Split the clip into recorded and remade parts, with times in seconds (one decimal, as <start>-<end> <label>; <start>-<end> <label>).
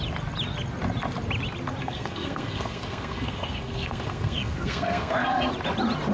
0.0-1.8 recorded; 1.8-5.5 remade; 5.5-6.1 recorded